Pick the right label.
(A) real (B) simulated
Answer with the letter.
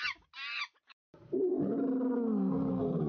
A